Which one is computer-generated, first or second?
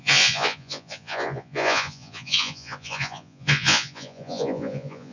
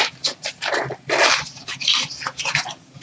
first